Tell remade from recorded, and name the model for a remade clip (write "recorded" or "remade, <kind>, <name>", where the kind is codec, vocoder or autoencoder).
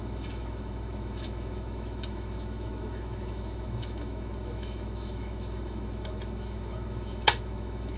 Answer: remade, autoencoder, DAC-VAE